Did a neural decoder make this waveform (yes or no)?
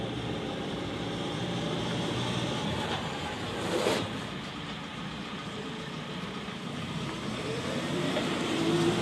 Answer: yes